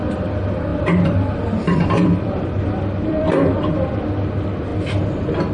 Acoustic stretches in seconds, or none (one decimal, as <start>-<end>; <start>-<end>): 0.0-0.7; 4.0-5.5